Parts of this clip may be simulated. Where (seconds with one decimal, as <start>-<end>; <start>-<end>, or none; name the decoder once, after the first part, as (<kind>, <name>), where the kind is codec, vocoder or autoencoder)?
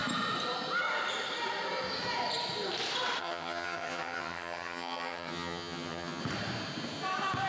3.2-6.2 (vocoder, HiFi-GAN)